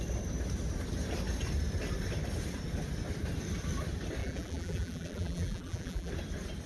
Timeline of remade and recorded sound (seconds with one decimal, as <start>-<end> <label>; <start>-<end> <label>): 0.0-4.2 recorded; 4.2-6.1 remade; 6.1-6.7 recorded